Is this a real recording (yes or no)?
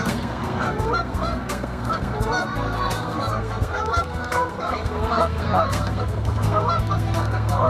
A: no